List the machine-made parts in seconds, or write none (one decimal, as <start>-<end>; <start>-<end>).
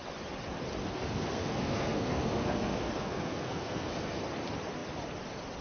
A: 0.8-4.2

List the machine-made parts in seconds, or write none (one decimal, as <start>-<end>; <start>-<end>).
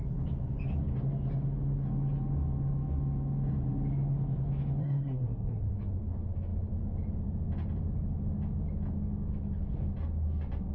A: 4.8-5.6